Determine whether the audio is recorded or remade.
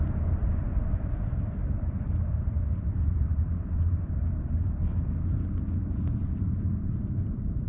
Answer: remade